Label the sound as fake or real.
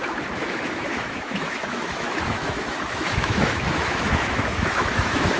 fake